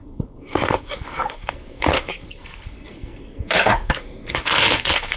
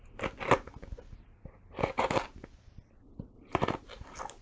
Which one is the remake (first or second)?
first